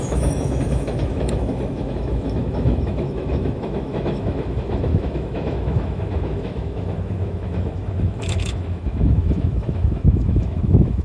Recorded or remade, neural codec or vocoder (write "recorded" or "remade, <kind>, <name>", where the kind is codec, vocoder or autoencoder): remade, autoencoder, DAC-VAE